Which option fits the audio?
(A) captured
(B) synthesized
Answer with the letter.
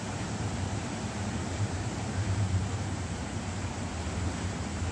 B